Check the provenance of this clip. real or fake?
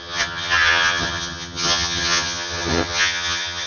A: fake